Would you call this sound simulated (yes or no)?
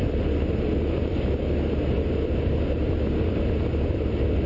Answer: no